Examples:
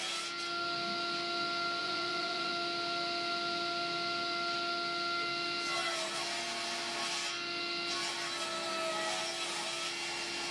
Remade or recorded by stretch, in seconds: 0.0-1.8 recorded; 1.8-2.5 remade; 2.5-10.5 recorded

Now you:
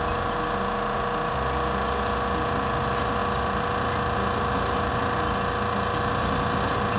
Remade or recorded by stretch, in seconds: 0.0-7.0 recorded